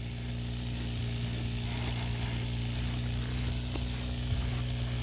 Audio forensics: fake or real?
real